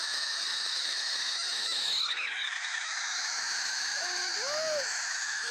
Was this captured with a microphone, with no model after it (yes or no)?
no